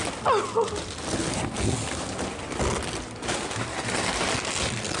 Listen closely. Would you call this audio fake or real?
real